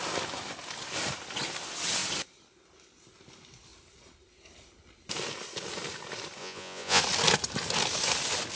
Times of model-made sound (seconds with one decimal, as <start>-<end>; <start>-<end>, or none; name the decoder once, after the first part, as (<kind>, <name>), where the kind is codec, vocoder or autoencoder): 6.4-7.0 (vocoder, Vocos)